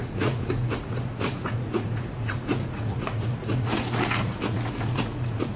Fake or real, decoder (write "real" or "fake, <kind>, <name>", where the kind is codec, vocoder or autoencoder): fake, vocoder, Vocos